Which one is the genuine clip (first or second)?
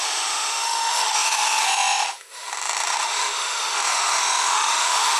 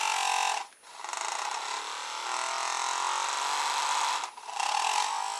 second